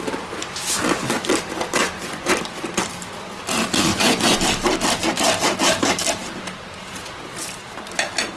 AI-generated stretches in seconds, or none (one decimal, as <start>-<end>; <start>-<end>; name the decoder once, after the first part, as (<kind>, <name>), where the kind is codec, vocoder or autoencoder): 1.8-2.3 (vocoder, Vocos); 3.9-4.4